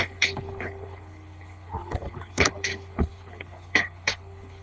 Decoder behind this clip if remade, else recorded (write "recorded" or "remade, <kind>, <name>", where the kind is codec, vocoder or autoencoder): remade, codec, HILCodec